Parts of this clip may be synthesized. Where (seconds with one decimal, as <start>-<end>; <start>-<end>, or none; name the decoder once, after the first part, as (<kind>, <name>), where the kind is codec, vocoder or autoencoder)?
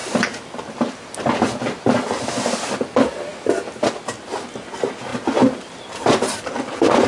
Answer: none